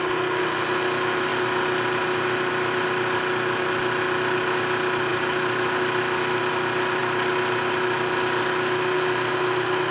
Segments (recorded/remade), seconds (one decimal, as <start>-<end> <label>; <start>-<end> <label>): 0.0-9.9 recorded